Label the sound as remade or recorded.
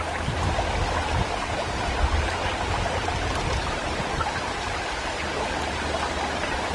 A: recorded